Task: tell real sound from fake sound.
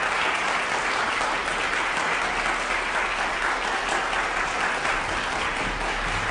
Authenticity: real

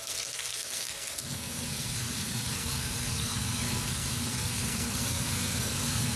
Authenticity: fake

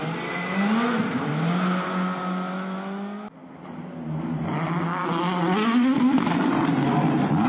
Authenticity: real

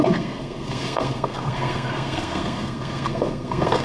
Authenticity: fake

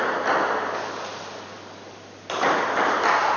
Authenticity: real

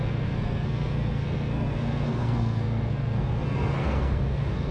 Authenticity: fake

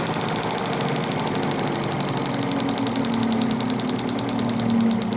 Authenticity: real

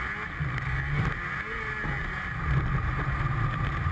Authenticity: real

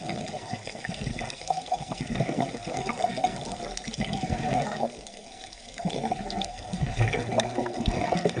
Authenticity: fake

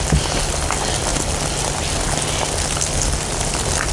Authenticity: real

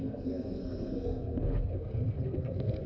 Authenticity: fake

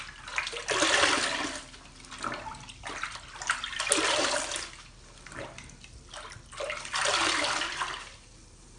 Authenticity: real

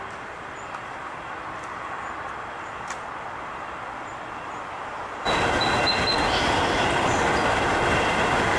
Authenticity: real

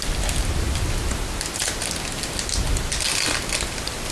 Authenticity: real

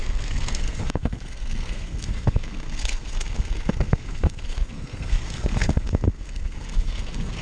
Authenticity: fake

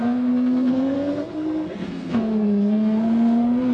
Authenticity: fake